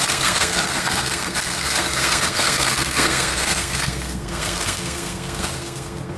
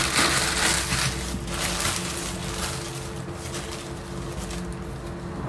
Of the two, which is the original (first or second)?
second